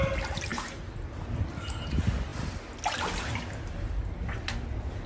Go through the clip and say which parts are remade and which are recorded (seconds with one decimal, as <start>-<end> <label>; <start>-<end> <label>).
0.0-5.1 recorded